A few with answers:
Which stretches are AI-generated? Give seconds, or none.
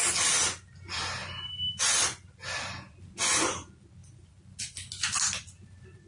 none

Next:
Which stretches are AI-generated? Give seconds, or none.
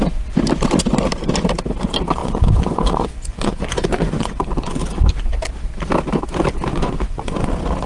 2.2-4.8 (vocoder, Vocos); 6.7-7.5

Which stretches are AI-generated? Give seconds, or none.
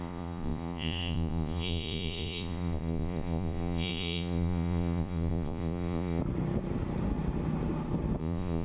0.0-6.2 (vocoder, Vocos); 8.2-8.6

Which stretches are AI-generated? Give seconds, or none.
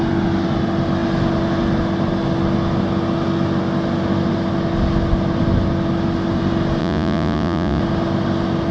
6.8-7.8 (vocoder, Vocos)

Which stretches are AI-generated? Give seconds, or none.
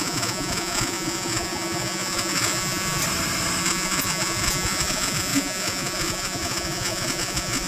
0.0-3.0 (vocoder, Vocos); 3.6-7.7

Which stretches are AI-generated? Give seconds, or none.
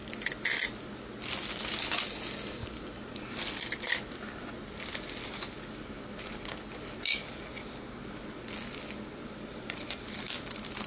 none